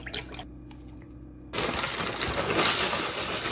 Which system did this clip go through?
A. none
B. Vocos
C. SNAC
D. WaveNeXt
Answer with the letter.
A